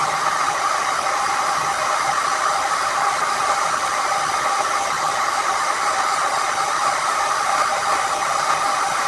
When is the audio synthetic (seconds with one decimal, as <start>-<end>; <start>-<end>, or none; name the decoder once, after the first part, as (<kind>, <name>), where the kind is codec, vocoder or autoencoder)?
0.0-0.8 (vocoder, BigVGAN v2)